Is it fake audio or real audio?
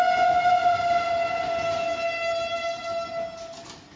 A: real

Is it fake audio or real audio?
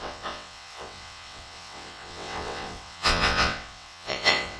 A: fake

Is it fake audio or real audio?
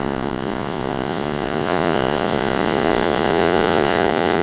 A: fake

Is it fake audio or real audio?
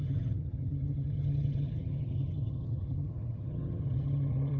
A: fake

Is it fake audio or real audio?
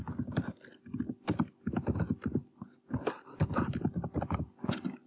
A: real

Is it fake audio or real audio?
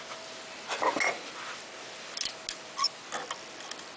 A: real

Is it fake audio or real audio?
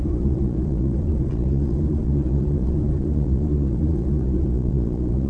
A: fake